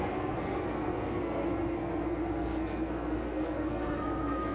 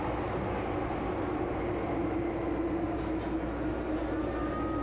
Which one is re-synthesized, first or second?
first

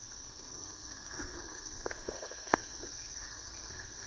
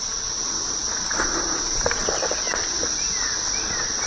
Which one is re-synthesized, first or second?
first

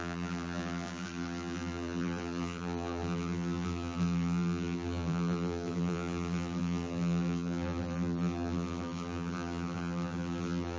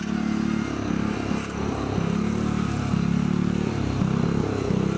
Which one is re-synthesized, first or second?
first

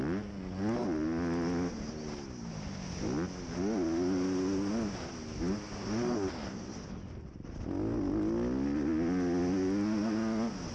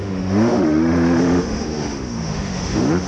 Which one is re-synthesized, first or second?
second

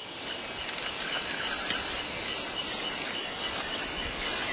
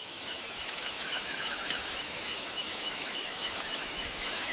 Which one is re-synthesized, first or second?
second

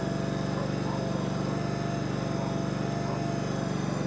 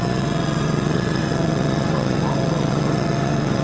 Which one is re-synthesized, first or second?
second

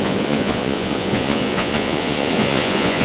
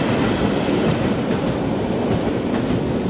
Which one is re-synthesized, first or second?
first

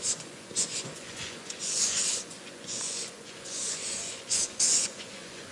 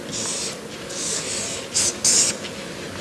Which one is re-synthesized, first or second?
first